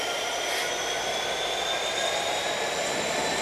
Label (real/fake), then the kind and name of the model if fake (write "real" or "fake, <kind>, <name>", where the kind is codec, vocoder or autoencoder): fake, vocoder, BigVGAN v2